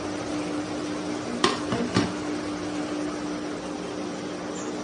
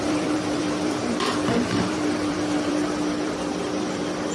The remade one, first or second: second